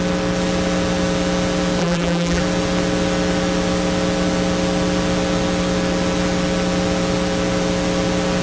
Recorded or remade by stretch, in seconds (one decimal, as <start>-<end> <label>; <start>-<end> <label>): 0.0-1.8 recorded; 1.8-2.4 remade; 2.4-8.4 recorded